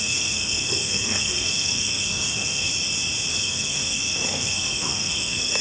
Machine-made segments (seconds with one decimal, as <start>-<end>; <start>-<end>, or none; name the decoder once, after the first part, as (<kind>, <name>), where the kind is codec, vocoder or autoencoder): 0.0-2.7 (codec, SNAC); 3.3-5.6